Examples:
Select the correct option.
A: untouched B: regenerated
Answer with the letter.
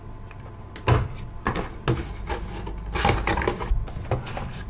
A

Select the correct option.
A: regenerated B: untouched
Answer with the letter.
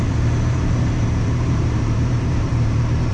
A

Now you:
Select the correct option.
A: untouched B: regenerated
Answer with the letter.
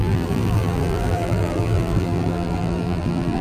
B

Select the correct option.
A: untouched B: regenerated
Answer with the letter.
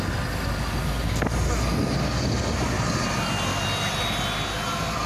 A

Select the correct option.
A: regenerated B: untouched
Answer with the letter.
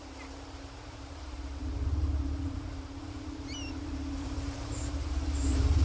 A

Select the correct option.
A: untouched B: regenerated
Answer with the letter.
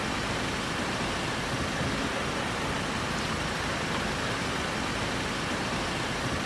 A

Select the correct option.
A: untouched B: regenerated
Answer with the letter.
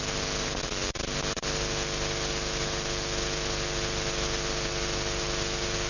A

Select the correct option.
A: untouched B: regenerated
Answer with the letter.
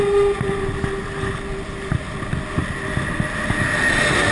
A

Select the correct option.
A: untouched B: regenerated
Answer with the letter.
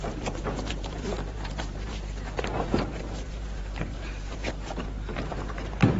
B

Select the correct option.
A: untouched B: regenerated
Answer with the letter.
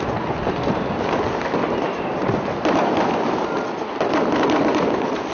A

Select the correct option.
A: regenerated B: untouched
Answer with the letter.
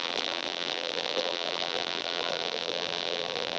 A